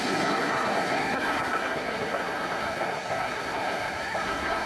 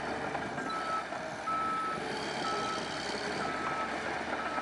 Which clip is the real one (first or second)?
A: second